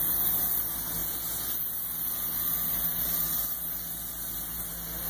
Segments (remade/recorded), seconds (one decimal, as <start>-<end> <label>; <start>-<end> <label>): 0.0-5.1 recorded